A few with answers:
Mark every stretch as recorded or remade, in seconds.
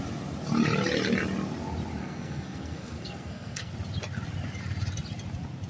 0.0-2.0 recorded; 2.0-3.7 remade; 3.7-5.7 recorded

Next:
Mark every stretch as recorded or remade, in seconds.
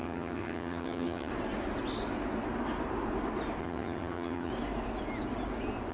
0.0-1.3 remade; 1.3-3.6 recorded; 3.6-4.5 remade; 4.5-5.9 recorded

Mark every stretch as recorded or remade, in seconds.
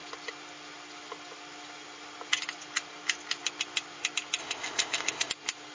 0.0-4.4 recorded; 4.4-5.3 remade; 5.3-5.7 recorded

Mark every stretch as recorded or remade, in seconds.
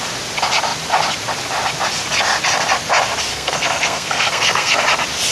0.0-3.3 recorded; 3.3-4.8 remade; 4.8-5.3 recorded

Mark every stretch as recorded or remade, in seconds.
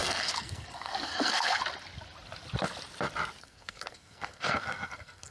0.0-1.6 remade; 1.6-3.4 recorded; 3.4-5.3 remade